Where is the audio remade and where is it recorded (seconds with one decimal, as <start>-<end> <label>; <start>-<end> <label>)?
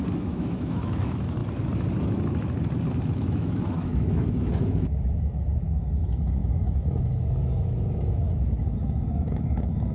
0.0-1.4 remade; 1.4-3.2 recorded; 3.2-9.9 remade